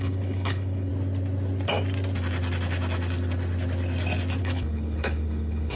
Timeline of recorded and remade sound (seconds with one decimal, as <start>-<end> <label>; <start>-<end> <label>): 0.0-0.9 remade; 0.9-4.4 recorded; 4.4-5.8 remade